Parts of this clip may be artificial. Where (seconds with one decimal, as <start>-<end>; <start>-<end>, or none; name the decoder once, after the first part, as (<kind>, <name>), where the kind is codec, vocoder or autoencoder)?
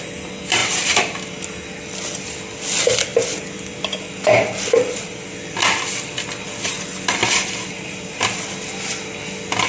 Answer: 0.6-1.5 (vocoder, BigVGAN v2); 7.2-8.2